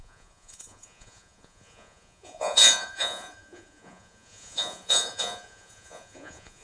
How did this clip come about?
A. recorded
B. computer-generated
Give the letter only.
B